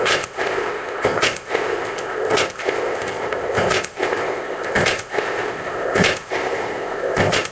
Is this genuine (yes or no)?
no